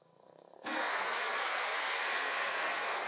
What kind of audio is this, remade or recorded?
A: remade